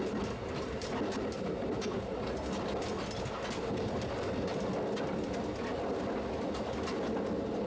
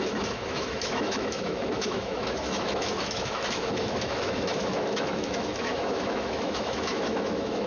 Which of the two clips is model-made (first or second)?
second